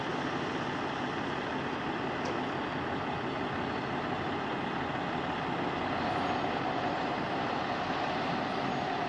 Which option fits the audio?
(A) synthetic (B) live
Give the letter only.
B